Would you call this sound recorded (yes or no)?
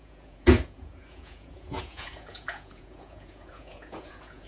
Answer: no